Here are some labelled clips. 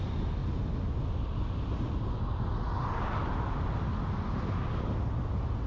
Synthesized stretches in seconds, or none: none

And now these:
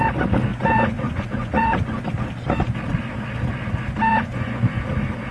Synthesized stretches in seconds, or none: 0.5-2.0 (vocoder, Vocos); 4.1-4.8

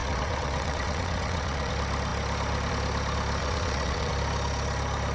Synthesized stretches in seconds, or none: 0.0-1.7 (vocoder, WaveNeXt); 3.4-4.1

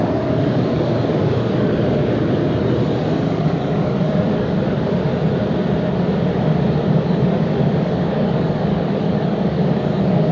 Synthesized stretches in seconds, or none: 0.0-2.4 (codec, DAC); 3.3-5.0; 6.9-10.3

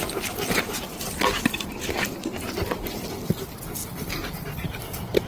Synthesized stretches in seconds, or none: none